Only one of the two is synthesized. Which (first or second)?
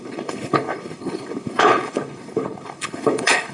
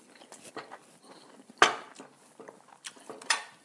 first